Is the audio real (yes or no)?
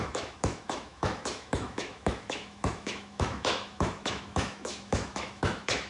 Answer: no